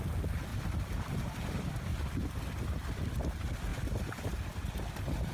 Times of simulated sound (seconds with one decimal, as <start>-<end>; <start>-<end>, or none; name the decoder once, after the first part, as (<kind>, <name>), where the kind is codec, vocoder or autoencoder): 0.5-1.1 (vocoder, BigVGAN v2); 3.7-4.7